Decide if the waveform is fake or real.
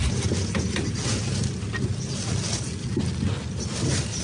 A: real